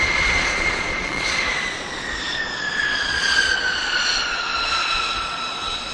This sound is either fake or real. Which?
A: fake